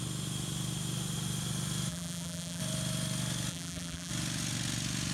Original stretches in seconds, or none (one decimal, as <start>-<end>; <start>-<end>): 0.0-1.9; 2.6-3.5; 4.1-5.1